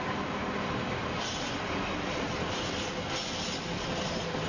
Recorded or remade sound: recorded